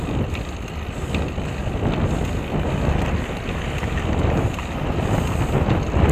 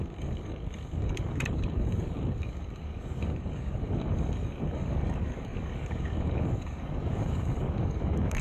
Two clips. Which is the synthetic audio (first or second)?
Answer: second